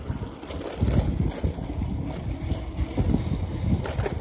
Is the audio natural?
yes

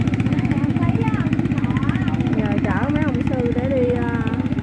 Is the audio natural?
yes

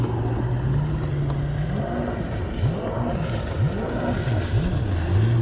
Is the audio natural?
yes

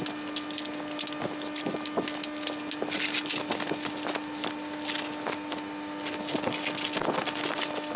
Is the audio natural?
yes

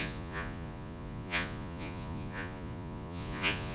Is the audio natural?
no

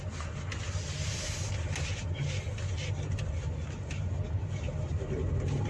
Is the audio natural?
yes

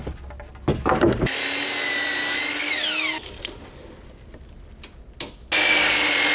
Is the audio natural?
yes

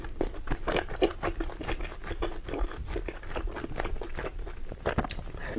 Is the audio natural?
yes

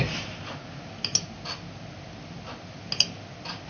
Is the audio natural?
yes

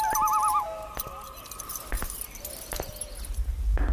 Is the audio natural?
yes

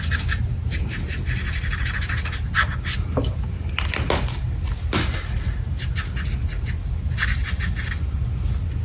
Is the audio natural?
yes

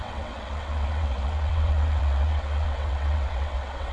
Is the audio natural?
no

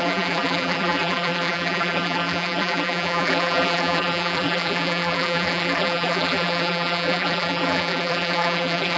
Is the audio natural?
no